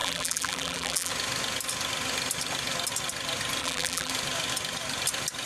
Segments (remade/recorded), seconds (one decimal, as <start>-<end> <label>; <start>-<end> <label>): 0.0-1.1 remade; 1.1-3.6 recorded; 3.6-4.1 remade; 4.1-5.5 recorded